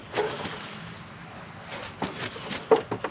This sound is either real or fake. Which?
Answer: real